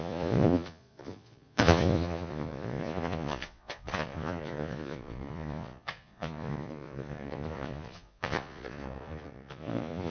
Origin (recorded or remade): remade